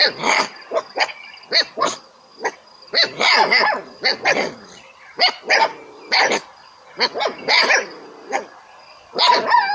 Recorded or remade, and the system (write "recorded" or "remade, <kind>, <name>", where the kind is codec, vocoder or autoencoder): recorded